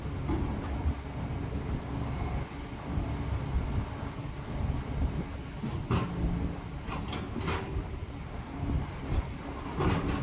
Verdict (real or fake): real